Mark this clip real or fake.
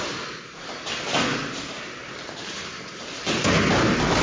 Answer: real